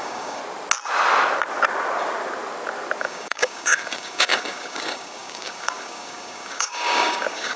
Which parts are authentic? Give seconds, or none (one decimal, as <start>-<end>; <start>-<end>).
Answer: 0.4-3.0